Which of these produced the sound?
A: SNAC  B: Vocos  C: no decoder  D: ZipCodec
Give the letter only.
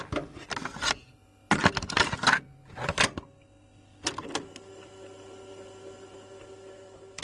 C